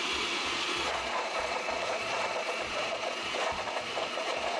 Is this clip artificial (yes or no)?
yes